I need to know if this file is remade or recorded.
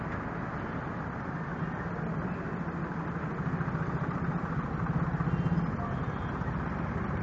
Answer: recorded